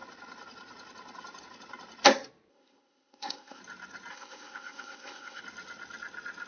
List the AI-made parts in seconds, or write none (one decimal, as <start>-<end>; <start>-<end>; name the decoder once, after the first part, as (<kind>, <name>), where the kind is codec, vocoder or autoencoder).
2.5-3.6 (codec, ZipCodec); 4.1-5.4